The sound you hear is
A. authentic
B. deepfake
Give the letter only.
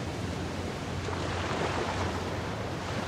B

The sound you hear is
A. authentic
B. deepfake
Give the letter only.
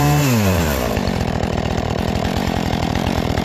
B